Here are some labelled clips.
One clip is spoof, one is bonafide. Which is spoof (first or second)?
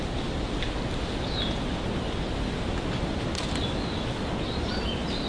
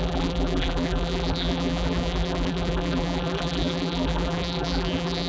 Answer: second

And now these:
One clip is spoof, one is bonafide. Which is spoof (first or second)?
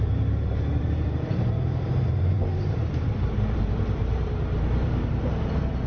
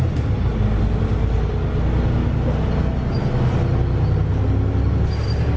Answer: first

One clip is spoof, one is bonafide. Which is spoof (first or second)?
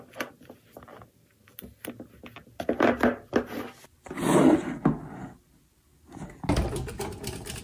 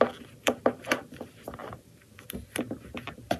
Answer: second